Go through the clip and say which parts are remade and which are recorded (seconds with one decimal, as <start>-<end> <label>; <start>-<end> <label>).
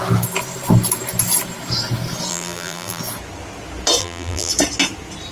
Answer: 0.0-2.3 recorded; 2.3-3.0 remade; 3.0-4.0 recorded; 4.0-4.5 remade; 4.5-5.3 recorded